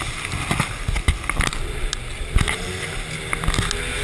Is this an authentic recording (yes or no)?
yes